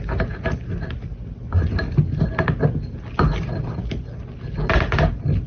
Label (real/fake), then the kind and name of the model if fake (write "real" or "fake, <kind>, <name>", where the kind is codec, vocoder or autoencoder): real